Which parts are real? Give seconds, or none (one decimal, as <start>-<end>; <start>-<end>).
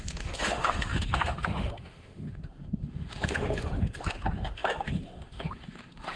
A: none